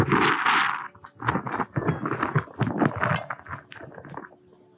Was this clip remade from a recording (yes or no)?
no